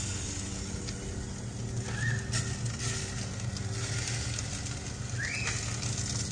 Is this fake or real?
real